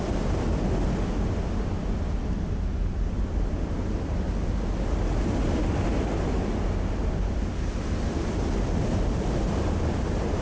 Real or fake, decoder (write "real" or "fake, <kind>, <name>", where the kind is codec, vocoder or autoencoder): real